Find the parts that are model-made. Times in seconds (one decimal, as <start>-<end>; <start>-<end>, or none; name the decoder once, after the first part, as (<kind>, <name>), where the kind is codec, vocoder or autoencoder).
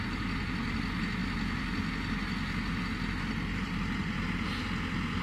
none